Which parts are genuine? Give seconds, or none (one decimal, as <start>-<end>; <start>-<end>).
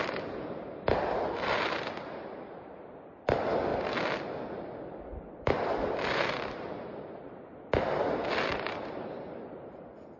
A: 3.7-4.4